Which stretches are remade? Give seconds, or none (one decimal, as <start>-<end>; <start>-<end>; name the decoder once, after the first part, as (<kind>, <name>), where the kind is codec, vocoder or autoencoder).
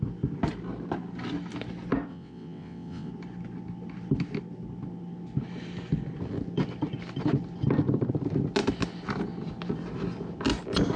2.1-3.1 (vocoder, WaveNeXt)